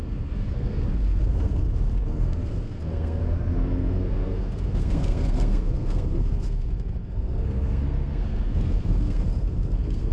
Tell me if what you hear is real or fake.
fake